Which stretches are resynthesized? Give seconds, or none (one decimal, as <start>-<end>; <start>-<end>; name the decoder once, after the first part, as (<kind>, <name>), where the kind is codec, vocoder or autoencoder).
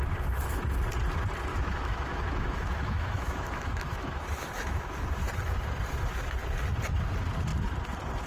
1.5-5.0 (autoencoder, DAC-VAE)